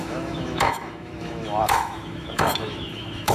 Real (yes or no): no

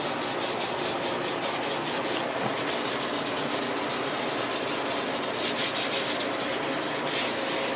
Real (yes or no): yes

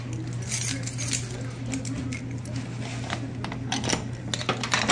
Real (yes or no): yes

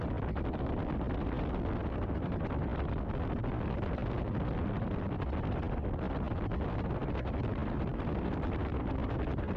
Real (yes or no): yes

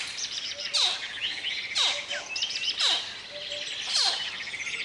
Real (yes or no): yes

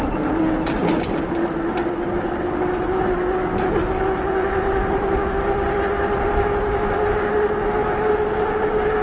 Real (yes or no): yes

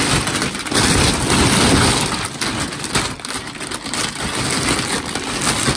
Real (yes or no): yes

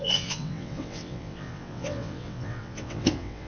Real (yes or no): no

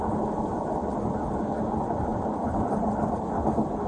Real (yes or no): yes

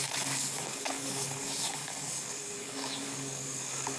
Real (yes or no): no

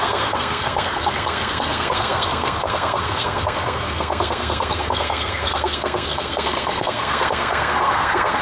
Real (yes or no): no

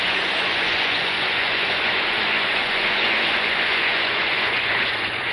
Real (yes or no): no